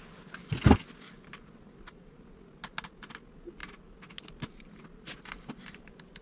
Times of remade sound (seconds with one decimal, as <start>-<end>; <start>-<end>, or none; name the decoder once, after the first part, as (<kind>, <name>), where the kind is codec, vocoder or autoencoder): none